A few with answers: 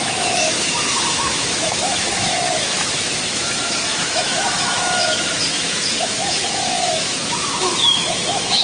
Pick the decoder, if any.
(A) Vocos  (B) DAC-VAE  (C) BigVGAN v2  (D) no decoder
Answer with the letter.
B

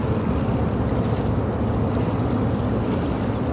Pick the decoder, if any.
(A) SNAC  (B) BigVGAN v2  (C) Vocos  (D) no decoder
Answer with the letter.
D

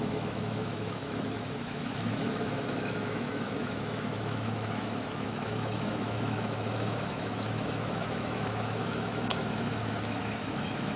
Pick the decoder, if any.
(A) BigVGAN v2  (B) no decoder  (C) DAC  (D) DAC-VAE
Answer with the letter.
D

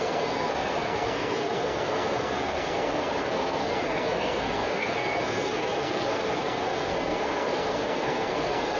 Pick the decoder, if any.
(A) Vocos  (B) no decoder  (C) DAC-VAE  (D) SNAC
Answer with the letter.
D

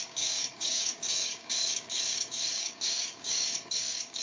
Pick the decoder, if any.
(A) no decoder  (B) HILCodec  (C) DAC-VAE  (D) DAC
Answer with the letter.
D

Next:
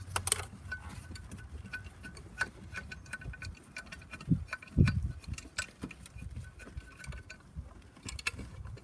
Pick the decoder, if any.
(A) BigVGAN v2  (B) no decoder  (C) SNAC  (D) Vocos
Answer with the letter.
B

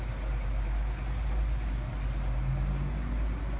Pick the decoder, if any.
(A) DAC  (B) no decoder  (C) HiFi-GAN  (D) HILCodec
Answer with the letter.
B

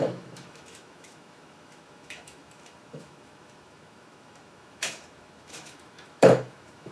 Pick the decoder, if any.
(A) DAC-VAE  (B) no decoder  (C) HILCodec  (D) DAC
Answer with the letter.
A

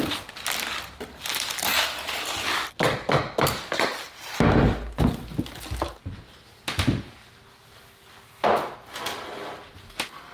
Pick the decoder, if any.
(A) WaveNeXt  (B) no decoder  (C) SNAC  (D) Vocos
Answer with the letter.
B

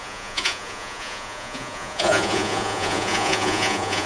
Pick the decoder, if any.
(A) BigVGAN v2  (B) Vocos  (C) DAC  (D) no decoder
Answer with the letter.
B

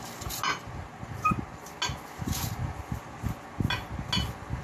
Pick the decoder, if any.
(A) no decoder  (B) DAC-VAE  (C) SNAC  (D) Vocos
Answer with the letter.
A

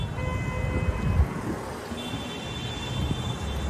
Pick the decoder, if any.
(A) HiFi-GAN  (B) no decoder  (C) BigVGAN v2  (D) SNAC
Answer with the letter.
B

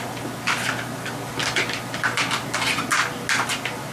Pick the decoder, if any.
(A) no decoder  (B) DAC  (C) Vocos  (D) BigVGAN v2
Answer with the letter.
A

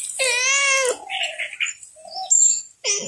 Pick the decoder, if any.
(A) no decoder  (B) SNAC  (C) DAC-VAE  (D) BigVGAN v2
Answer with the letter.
A